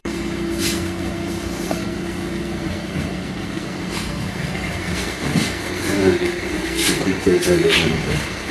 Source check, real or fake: fake